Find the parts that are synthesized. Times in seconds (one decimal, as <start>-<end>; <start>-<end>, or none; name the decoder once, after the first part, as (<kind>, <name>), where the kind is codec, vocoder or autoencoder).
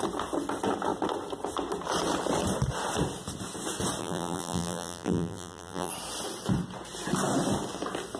4.0-5.9 (vocoder, BigVGAN v2)